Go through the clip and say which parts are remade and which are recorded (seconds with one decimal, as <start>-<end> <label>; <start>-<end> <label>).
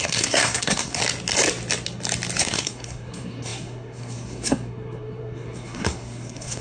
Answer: 0.0-1.0 remade; 1.0-2.4 recorded; 2.4-6.6 remade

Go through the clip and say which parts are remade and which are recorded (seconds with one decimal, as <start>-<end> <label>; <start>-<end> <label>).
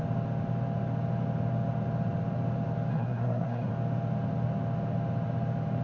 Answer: 0.0-2.9 recorded; 2.9-3.7 remade; 3.7-5.8 recorded